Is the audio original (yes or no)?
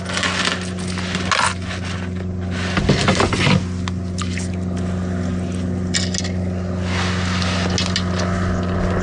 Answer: yes